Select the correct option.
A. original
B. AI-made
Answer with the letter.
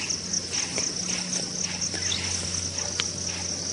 A